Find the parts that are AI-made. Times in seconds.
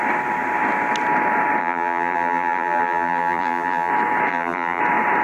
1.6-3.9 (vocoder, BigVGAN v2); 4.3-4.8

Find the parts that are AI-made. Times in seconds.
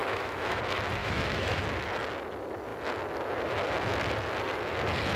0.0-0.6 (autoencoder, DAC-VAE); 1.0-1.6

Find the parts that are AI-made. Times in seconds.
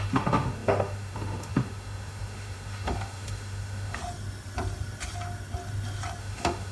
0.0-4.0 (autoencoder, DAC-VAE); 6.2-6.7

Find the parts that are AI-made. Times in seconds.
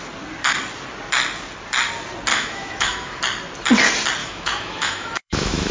2.3-3.2 (autoencoder, DAC-VAE); 4.2-5.7